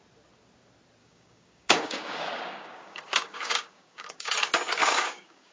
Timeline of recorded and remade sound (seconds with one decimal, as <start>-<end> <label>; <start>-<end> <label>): 0.0-1.0 recorded; 1.0-4.3 remade; 4.3-4.8 recorded; 4.8-5.5 remade